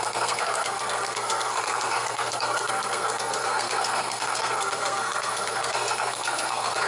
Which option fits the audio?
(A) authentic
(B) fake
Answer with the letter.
B